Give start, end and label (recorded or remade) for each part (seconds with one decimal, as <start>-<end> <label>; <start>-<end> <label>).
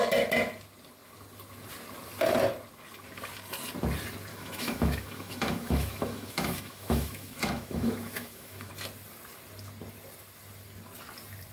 0.0-4.3 recorded; 4.3-8.7 remade; 8.7-11.5 recorded